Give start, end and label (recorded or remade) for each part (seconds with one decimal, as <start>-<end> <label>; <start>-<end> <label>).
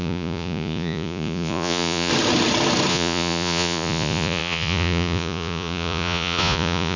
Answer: 0.0-2.1 remade; 2.1-2.9 recorded; 2.9-7.0 remade